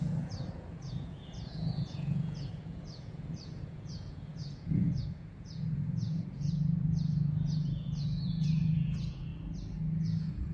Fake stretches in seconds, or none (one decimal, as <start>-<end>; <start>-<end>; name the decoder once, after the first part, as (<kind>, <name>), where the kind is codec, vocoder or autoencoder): 0.0-9.3 (vocoder, Vocos); 10.0-10.5